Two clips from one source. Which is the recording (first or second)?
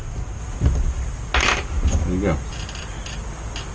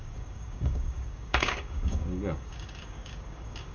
first